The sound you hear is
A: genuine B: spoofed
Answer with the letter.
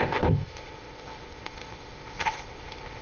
B